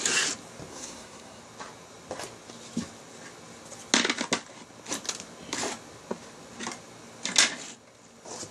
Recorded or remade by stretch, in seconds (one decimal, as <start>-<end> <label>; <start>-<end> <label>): 0.0-0.7 recorded; 0.7-1.4 remade; 1.4-8.5 recorded